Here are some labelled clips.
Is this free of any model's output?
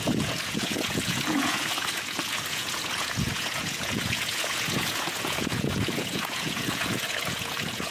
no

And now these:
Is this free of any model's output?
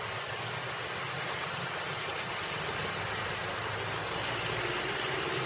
yes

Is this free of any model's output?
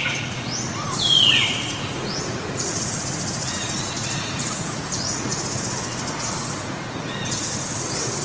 no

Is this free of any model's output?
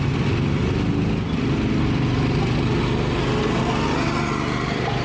yes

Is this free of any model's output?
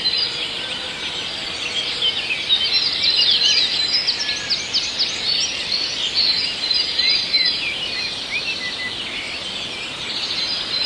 yes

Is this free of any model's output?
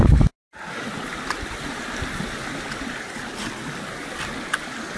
yes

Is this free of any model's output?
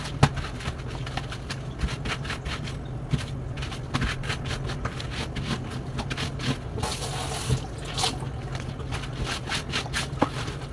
yes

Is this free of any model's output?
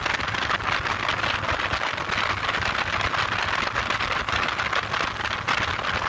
yes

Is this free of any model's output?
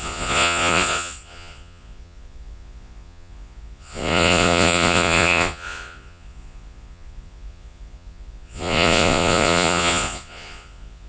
no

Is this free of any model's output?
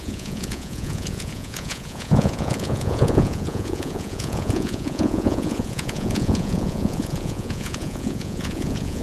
no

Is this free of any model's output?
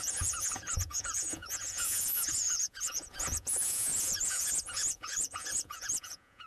no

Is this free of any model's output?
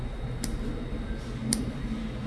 yes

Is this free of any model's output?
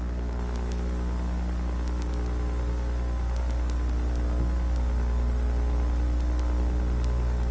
yes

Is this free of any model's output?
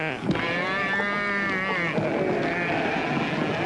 yes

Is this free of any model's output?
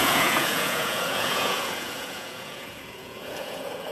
no